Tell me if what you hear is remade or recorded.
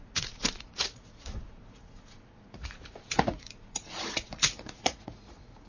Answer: remade